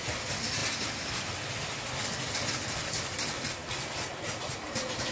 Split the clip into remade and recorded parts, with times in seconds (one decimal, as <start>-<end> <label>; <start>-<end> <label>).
0.0-5.1 recorded